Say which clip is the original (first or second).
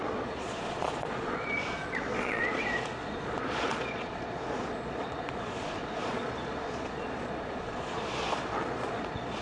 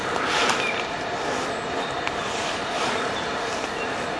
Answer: second